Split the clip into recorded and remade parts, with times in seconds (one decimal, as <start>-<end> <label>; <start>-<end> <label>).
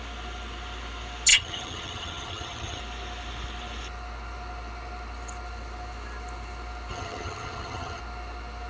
0.0-1.3 recorded; 1.3-2.8 remade; 2.8-6.9 recorded; 6.9-8.0 remade; 8.0-8.7 recorded